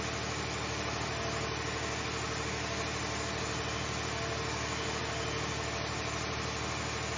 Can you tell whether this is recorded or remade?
recorded